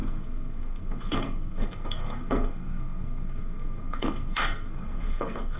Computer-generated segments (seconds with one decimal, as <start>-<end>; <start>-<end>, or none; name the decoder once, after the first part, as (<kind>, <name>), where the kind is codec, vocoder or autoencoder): 0.0-5.6 (codec, SNAC)